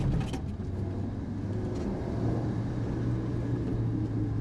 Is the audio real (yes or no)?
yes